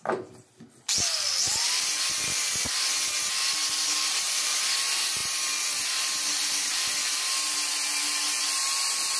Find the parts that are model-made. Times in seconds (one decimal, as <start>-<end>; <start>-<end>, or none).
3.8-4.6